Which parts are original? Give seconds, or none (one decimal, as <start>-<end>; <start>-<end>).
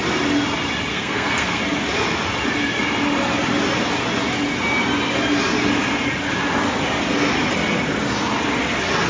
0.0-0.9; 1.6-9.1